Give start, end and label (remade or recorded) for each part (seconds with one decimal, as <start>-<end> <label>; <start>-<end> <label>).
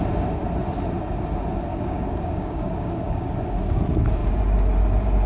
0.0-1.7 recorded; 1.7-3.3 remade; 3.3-5.3 recorded